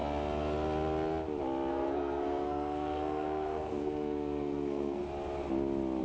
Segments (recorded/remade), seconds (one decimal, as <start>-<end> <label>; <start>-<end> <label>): 0.0-1.7 recorded; 1.7-5.0 remade; 5.0-6.0 recorded